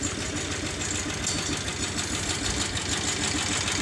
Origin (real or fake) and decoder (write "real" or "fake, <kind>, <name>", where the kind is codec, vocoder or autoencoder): real